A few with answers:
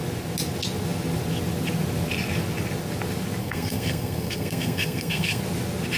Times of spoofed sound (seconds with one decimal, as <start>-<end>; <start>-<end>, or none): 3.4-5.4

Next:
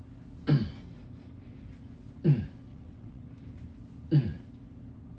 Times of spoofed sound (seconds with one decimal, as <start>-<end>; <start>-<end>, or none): 2.7-3.2

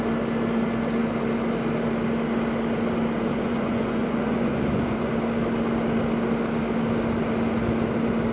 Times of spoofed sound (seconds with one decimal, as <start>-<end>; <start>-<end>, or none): 3.3-5.1

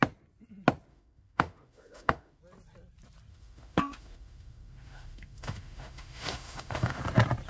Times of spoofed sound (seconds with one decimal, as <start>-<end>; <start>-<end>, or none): 0.9-2.4; 3.3-7.0